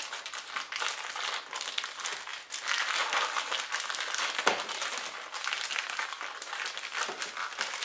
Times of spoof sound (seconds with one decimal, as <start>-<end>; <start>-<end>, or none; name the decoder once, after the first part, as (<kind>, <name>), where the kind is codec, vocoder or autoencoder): none

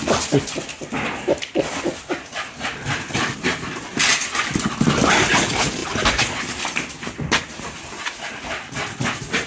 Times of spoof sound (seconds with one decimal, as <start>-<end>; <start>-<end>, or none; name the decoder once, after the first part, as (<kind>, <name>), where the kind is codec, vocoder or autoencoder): none

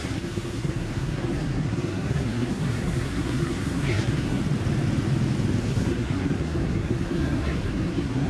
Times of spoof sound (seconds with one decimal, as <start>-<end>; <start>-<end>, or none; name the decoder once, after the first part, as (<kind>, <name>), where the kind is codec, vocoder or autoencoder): 0.0-4.4 (codec, SNAC); 5.6-8.3

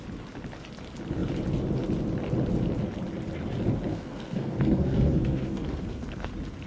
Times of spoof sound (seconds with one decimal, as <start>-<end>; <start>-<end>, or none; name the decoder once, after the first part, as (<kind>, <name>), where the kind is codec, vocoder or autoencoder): 3.9-6.3 (codec, SNAC)

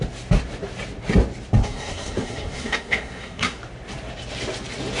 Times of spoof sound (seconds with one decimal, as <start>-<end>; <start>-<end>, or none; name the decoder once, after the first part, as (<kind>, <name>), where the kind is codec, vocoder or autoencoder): 1.6-3.6 (codec, SNAC)